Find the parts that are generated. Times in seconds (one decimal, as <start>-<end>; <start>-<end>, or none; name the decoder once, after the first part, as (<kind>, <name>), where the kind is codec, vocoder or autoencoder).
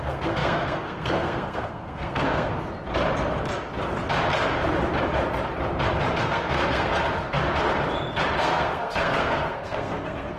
0.0-2.5 (codec, SNAC); 6.2-6.9; 8.4-10.4